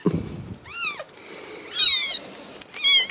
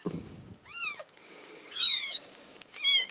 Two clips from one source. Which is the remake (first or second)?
second